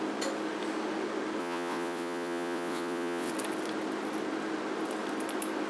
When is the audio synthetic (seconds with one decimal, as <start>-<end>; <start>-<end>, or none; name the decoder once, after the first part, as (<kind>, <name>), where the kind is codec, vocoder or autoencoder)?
1.4-3.3 (vocoder, WaveNeXt)